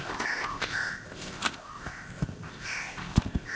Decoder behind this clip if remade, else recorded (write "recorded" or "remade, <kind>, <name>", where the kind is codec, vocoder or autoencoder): remade, codec, ZipCodec